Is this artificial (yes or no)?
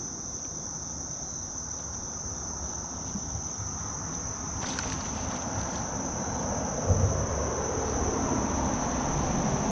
no